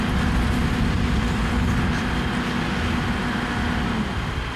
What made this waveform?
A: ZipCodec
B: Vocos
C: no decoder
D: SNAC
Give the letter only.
C